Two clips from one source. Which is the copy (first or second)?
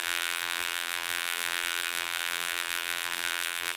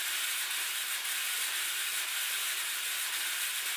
first